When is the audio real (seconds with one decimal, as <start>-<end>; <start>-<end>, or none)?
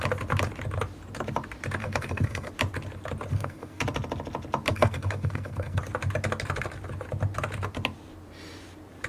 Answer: 0.0-1.8; 2.5-3.3; 3.8-4.7; 5.8-9.1